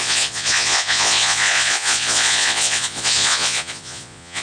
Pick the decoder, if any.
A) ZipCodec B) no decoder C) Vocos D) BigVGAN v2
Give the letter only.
C